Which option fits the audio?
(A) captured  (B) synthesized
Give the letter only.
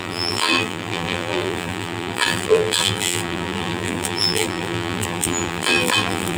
B